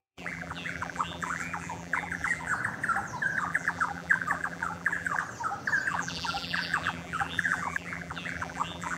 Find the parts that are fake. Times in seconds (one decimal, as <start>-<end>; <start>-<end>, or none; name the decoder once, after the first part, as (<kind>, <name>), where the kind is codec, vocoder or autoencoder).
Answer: 0.0-2.5 (vocoder, BigVGAN v2); 3.4-5.2; 5.9-9.0